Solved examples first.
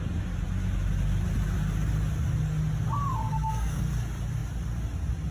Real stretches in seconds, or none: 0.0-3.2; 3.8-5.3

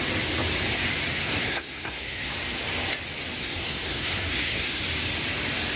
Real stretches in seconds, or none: 0.0-1.1; 2.3-3.4; 4.8-5.8